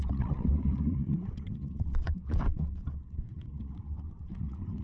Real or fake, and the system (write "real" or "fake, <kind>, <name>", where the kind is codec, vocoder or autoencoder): fake, vocoder, WaveNeXt